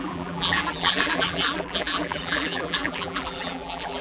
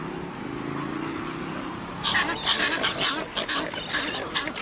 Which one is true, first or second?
second